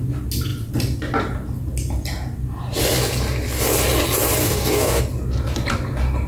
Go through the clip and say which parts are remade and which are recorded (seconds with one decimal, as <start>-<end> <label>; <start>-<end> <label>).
0.0-4.4 recorded; 4.4-5.0 remade; 5.0-6.3 recorded